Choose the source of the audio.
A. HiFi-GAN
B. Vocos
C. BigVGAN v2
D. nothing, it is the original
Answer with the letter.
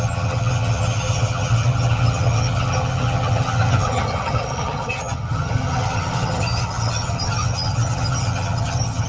A